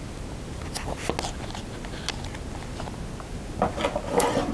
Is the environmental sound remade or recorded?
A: recorded